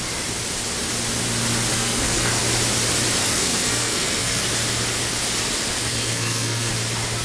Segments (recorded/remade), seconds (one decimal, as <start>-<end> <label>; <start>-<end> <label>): 0.0-1.7 recorded; 1.7-2.4 remade; 2.4-3.2 recorded; 3.2-4.4 remade; 4.4-5.7 recorded; 5.7-6.7 remade; 6.7-7.2 recorded